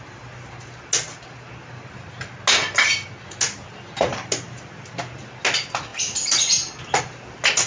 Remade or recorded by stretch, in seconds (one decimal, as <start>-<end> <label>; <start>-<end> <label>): 0.0-7.7 recorded